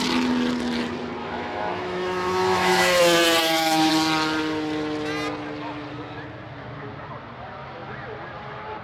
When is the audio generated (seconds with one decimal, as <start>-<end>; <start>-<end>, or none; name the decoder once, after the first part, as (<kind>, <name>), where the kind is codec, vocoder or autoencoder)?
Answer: 1.2-3.0 (autoencoder, DAC-VAE); 3.4-3.9

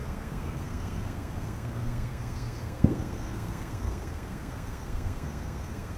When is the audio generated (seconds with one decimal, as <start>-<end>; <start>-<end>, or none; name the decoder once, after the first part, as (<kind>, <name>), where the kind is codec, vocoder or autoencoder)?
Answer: 0.0-6.0 (codec, SNAC)